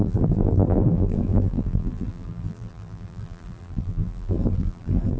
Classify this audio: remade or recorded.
remade